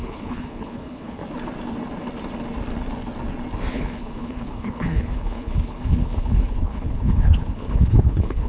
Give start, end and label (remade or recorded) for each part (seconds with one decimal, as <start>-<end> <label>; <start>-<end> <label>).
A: 0.0-1.2 remade; 1.2-3.7 recorded; 3.7-8.5 remade